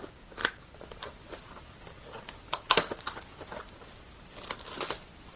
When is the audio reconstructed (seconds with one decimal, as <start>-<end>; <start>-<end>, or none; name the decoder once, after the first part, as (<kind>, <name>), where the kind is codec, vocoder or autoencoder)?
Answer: none

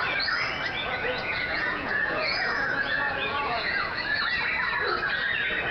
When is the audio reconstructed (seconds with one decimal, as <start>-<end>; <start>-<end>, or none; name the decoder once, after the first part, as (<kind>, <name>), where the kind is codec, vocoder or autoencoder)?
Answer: 0.8-4.2 (vocoder, Vocos)

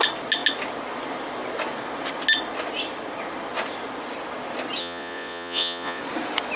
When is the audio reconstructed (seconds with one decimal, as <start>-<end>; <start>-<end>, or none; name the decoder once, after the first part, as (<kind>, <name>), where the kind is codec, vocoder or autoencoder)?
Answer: 4.8-6.0 (vocoder, Vocos)

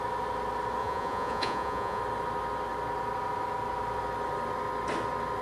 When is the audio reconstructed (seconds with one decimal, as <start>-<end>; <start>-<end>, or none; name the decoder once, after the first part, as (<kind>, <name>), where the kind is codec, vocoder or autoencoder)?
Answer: 0.8-2.0 (vocoder, Vocos)

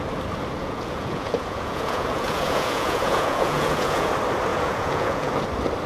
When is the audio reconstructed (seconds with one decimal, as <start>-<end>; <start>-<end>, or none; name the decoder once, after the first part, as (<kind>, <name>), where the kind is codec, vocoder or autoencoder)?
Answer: 0.6-4.1 (vocoder, Vocos); 4.5-5.3

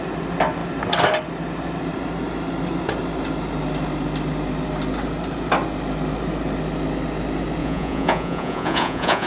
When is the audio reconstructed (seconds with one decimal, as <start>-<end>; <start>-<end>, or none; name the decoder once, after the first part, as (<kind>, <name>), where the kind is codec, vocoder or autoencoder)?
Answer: 7.6-9.3 (vocoder, Vocos)